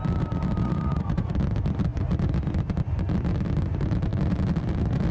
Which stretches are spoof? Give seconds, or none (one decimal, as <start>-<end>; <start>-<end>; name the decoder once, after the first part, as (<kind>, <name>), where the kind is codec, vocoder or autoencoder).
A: 0.6-1.3 (vocoder, Vocos)